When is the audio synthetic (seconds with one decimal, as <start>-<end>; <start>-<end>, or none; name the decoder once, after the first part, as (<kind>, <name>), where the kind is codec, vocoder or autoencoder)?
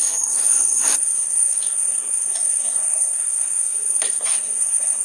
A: 0.0-5.0 (codec, SNAC)